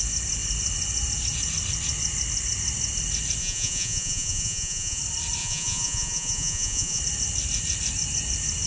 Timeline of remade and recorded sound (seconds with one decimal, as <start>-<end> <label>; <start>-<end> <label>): 0.0-3.4 recorded; 3.4-5.0 remade; 5.0-5.4 recorded; 5.4-7.0 remade; 7.0-8.7 recorded